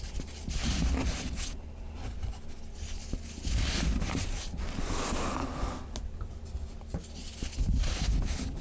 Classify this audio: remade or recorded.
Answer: recorded